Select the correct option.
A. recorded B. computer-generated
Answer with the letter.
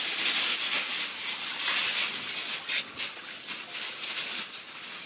A